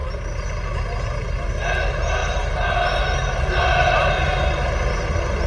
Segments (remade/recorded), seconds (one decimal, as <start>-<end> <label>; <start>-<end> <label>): 0.0-5.5 recorded